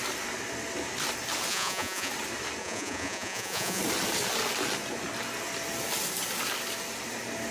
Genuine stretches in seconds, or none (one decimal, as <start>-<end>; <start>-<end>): 0.0-1.5; 2.1-2.6; 3.8-7.5